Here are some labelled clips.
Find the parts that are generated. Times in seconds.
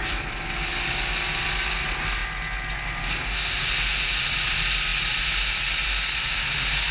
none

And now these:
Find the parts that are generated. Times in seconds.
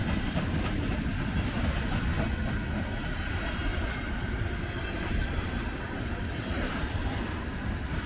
0.0-0.9; 3.7-8.1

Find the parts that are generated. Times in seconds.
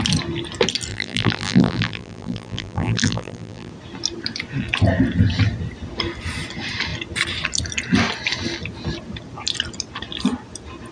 0.9-3.7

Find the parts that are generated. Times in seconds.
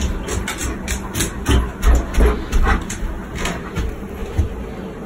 none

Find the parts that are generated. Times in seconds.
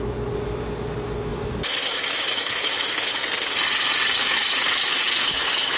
1.3-3.1; 4.2-5.8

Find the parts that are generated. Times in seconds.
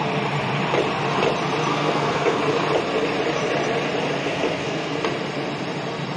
1.7-2.4; 4.2-5.0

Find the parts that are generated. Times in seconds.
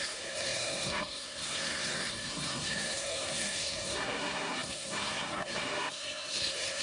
0.0-6.8